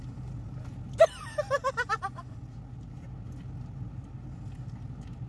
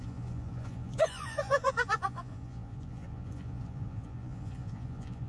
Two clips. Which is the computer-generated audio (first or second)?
second